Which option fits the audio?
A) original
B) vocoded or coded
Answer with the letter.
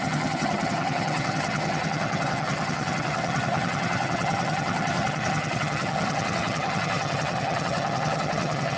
B